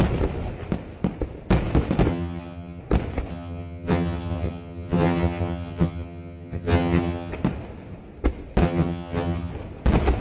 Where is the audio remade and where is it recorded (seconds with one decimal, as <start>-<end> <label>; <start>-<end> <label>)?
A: 0.0-2.1 recorded; 2.1-2.8 remade; 2.8-3.3 recorded; 3.3-7.3 remade; 7.3-8.6 recorded; 8.6-9.5 remade; 9.5-10.2 recorded